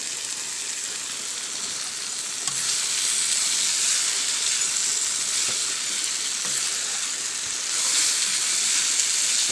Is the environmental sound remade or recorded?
recorded